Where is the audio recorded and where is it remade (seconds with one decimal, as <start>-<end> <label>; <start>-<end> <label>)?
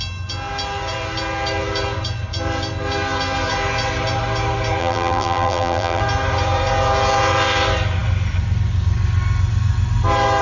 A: 0.0-4.8 recorded; 4.8-6.0 remade; 6.0-10.4 recorded